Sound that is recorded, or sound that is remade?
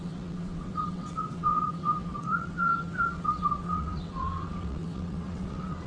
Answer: remade